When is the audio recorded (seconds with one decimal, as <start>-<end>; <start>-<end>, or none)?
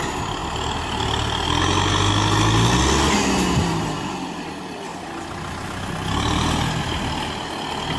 0.0-8.0